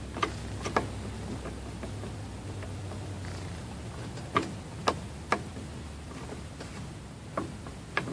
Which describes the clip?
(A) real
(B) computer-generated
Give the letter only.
A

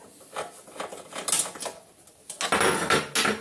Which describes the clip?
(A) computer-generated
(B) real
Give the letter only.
B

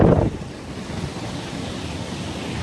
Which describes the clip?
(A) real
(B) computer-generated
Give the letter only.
A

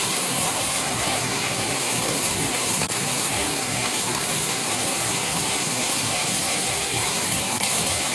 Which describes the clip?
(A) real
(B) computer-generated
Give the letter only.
B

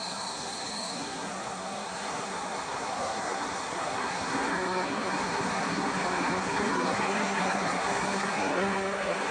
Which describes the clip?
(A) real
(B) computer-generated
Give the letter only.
B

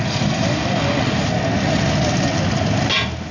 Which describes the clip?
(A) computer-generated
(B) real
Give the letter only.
B